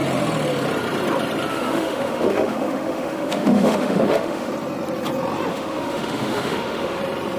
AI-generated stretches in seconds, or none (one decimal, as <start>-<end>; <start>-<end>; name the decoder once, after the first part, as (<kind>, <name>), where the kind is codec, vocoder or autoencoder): 1.5-4.5 (autoencoder, DAC-VAE); 5.5-7.0